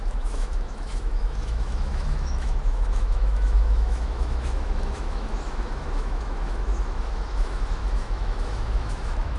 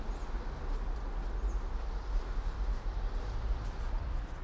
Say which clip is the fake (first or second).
first